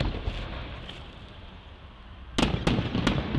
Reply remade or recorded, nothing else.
recorded